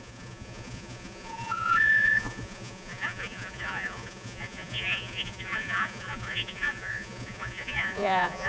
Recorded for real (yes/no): no